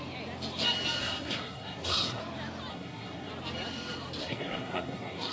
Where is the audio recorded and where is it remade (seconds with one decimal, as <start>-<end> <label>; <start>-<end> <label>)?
0.0-1.0 recorded; 1.0-2.2 remade; 2.2-2.7 recorded; 2.7-3.3 remade; 3.3-4.2 recorded; 4.2-5.3 remade